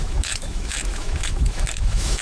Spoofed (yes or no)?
yes